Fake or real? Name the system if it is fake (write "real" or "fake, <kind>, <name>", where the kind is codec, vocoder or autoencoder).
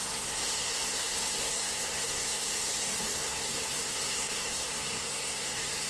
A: fake, codec, SNAC